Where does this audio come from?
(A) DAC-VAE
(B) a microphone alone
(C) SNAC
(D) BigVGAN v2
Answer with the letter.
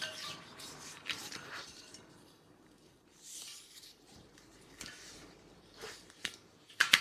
D